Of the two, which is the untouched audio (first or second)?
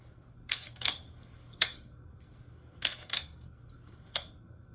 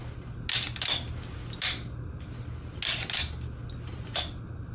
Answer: second